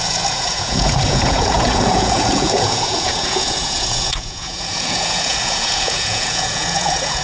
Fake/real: fake